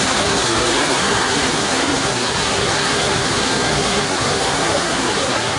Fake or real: fake